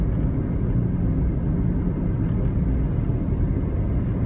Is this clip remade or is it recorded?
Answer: recorded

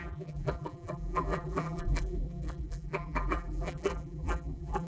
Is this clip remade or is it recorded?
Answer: remade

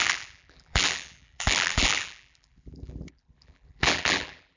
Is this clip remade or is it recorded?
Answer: remade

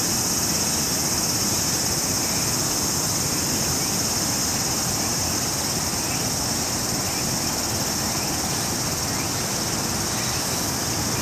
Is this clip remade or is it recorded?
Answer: recorded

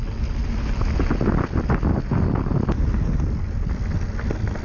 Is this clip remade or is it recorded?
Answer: recorded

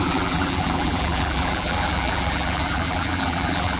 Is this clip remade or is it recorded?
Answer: remade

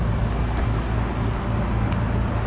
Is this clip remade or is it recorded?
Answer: recorded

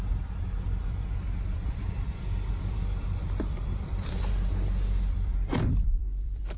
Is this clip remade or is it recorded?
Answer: remade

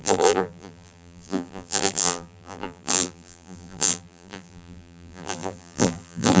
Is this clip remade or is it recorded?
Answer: remade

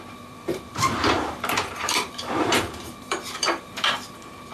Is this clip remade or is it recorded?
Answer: remade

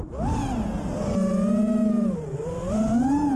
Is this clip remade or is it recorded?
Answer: recorded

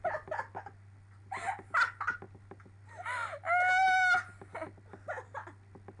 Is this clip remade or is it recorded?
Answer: recorded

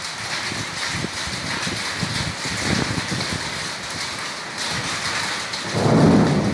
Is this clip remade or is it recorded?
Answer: recorded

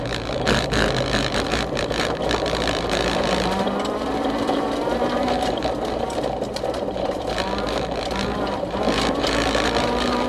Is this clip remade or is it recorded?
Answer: remade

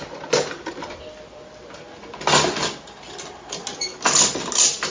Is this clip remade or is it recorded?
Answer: recorded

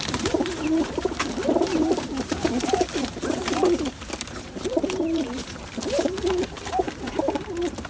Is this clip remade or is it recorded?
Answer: remade